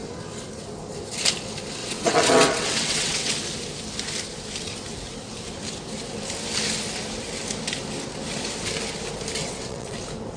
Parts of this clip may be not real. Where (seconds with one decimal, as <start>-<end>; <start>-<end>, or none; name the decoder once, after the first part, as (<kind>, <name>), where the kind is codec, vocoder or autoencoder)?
1.8-3.3 (vocoder, WaveNeXt); 9.4-10.0